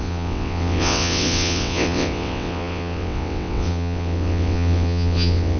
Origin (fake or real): fake